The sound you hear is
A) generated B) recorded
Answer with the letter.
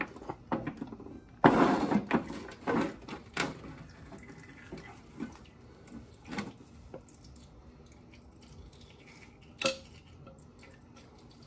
B